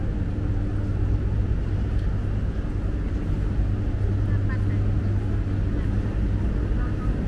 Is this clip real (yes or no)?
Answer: yes